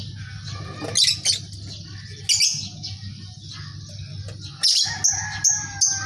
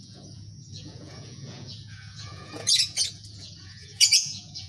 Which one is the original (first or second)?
first